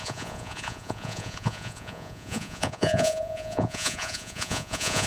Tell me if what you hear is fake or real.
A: fake